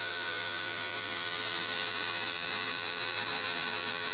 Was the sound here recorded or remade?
remade